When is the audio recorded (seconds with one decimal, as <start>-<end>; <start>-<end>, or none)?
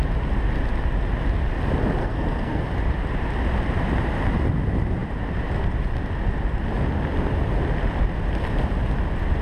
0.0-2.0; 2.6-9.4